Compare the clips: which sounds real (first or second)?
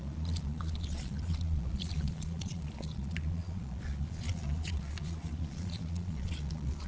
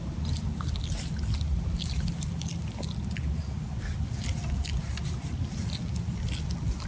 second